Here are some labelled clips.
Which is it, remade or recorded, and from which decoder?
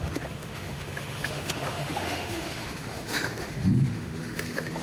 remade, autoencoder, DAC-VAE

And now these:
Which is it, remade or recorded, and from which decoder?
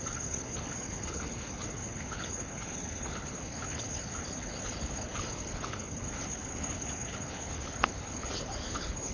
remade, codec, HILCodec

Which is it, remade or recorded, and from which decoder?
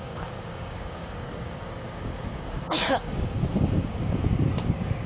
remade, codec, DAC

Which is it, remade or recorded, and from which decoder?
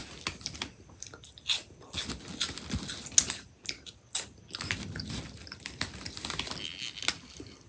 recorded